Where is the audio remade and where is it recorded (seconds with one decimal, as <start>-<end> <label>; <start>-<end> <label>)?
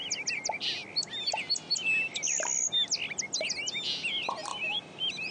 0.0-4.5 recorded; 4.5-5.3 remade